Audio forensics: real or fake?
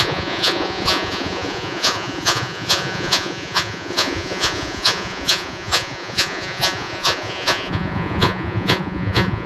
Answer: fake